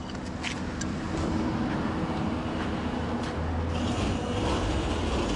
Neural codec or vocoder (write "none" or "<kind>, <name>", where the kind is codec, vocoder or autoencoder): none